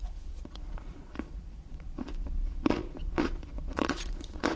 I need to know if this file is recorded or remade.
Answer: remade